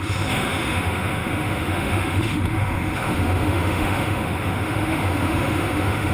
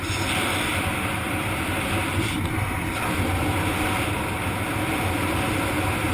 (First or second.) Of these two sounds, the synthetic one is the first